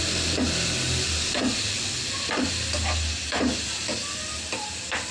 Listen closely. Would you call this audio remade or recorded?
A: recorded